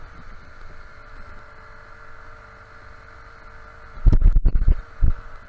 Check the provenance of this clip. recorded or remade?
recorded